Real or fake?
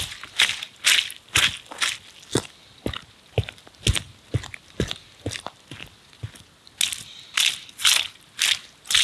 real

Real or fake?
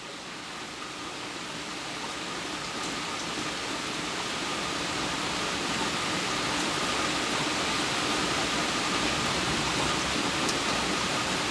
real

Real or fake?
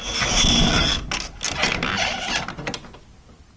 real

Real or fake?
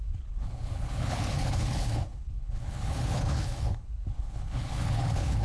fake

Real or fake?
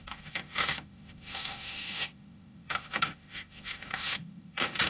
fake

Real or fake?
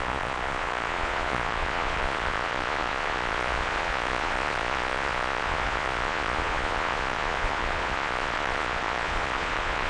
fake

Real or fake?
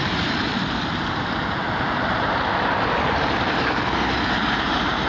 fake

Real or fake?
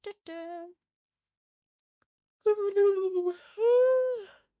fake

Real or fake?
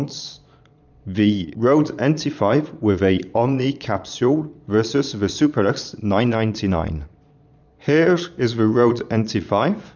fake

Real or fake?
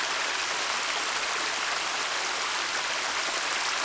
real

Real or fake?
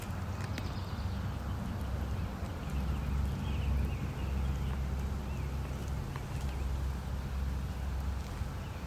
real